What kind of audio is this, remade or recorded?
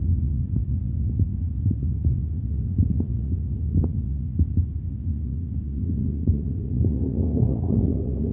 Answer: remade